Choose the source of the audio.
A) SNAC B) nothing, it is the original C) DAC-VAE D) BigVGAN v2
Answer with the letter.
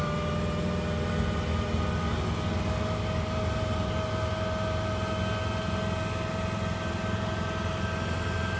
B